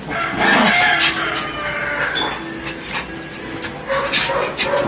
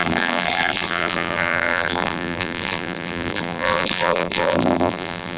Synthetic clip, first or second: second